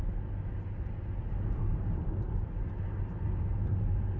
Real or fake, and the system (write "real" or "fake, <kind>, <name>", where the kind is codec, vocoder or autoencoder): real